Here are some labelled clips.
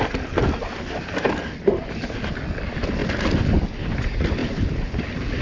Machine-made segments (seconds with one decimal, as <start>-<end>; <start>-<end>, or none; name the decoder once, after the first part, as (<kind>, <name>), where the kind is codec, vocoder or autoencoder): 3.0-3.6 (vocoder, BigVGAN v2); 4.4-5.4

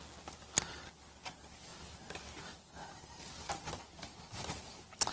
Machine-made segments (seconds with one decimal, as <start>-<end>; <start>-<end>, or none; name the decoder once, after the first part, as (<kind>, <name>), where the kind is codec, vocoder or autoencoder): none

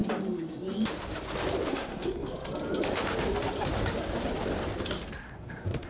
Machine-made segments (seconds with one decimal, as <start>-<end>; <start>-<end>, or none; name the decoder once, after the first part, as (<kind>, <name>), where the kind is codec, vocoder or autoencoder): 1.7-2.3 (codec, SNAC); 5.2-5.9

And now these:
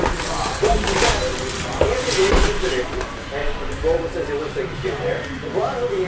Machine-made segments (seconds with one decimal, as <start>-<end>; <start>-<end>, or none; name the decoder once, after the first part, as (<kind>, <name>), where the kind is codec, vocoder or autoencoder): none